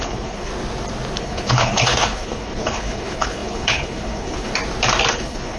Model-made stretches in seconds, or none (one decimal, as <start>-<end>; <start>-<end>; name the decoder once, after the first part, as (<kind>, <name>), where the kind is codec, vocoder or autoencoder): 0.0-0.5 (codec, HILCodec); 1.2-4.5; 5.1-5.6